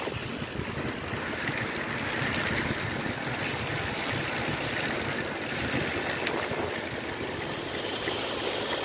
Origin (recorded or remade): recorded